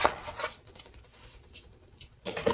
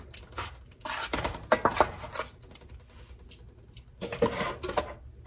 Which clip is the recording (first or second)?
second